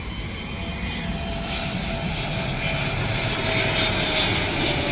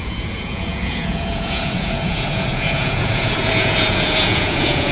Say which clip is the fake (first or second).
second